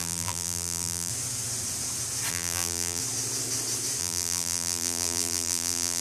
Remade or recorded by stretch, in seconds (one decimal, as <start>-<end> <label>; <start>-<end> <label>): 0.0-1.1 remade; 1.1-2.3 recorded; 2.3-3.0 remade; 3.0-4.0 recorded; 4.0-6.0 remade